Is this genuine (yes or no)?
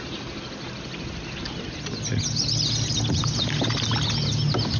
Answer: yes